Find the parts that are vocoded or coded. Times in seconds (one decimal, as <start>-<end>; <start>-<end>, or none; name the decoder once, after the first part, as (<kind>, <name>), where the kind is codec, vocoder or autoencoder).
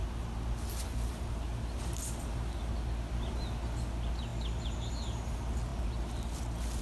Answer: none